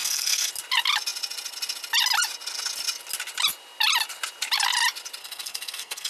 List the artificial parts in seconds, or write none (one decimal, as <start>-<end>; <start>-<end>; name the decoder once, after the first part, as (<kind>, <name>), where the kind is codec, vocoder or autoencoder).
0.0-0.5 (codec, SNAC); 5.2-6.1